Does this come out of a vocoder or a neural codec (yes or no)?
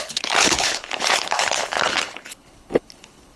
yes